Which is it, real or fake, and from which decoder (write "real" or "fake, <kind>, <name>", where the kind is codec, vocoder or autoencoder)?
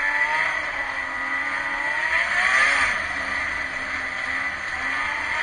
real